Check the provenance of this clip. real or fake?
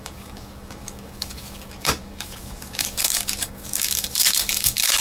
fake